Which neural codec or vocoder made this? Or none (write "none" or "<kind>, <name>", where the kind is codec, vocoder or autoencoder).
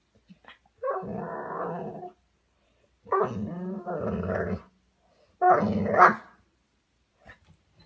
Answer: none